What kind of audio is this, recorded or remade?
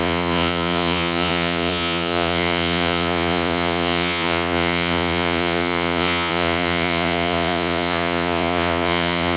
remade